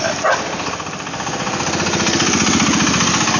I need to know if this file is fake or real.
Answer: real